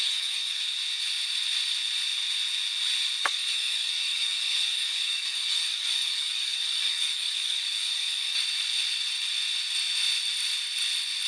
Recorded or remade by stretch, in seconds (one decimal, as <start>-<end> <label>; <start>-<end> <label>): 0.0-0.6 remade; 0.6-3.2 recorded; 3.2-8.4 remade; 8.4-11.3 recorded